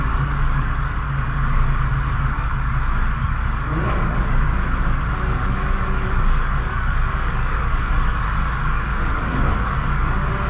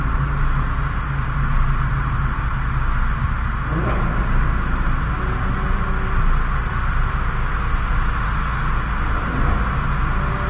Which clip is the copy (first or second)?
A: first